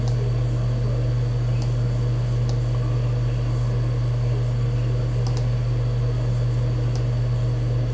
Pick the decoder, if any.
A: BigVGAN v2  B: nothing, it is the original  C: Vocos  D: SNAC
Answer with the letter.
B